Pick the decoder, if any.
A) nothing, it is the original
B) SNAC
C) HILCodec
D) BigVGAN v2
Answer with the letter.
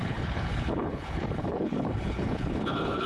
C